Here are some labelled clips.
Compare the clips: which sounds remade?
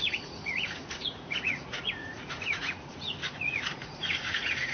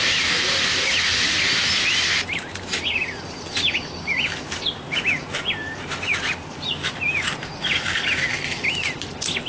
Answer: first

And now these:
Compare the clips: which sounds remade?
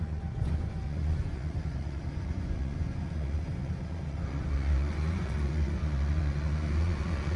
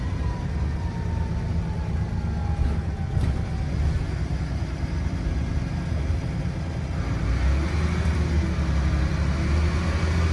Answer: first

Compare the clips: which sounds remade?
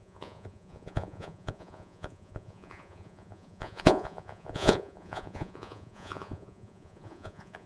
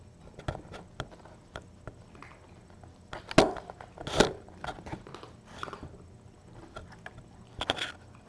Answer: first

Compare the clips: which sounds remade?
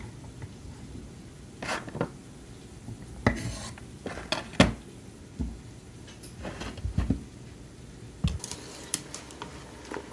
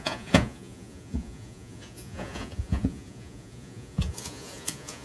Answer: second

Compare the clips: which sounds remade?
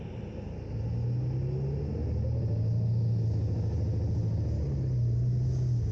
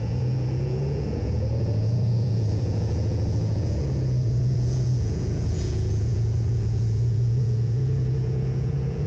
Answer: second